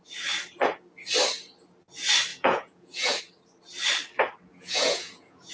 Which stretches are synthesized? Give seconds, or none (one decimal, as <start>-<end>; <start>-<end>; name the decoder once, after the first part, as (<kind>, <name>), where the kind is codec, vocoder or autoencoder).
2.3-3.2 (vocoder, Vocos); 4.5-5.5